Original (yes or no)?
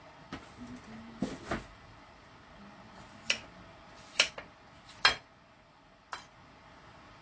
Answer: yes